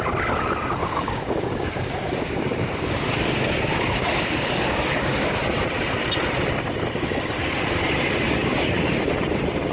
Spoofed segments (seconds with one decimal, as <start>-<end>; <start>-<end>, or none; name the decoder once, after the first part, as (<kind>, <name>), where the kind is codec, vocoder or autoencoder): 0.8-5.4 (codec, DAC)

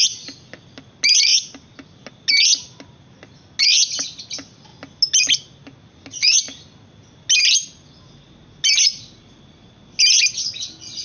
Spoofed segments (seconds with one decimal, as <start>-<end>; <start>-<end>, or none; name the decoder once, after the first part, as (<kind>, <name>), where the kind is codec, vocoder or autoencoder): none

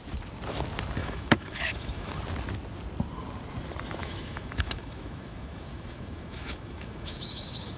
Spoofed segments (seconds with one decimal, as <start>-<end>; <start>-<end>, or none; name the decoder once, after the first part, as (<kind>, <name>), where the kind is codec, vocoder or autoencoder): 1.0-2.2 (autoencoder, DAC-VAE); 4.0-7.8